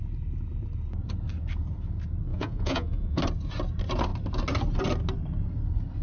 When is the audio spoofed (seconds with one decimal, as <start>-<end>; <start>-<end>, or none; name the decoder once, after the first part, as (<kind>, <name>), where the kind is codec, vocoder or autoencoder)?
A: 2.3-3.2 (vocoder, Vocos)